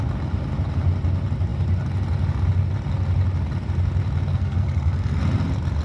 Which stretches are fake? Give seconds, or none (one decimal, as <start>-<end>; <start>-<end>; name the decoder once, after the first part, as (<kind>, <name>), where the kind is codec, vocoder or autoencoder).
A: 4.3-5.2 (codec, SNAC)